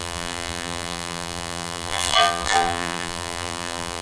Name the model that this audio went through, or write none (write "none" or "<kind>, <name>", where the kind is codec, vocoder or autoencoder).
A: vocoder, BigVGAN v2